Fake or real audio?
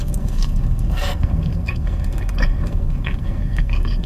fake